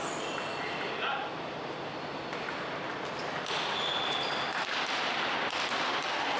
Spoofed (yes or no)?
no